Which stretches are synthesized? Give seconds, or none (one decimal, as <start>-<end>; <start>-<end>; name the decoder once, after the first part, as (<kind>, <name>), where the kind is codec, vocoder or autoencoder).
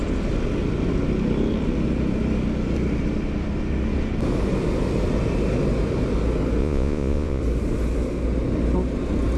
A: 6.6-7.4 (vocoder, Vocos)